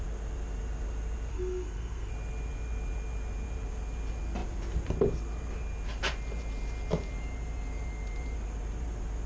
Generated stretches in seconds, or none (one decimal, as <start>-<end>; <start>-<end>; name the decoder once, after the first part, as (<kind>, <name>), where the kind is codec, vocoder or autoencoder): 1.3-2.1 (codec, SNAC)